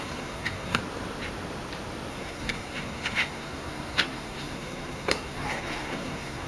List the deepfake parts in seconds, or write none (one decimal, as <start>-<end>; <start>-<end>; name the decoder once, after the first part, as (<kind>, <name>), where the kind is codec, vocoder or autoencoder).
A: 0.0-0.8 (codec, SNAC); 2.1-6.5